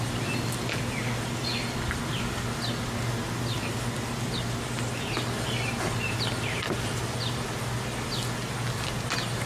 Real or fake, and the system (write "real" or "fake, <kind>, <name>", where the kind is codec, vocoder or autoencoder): real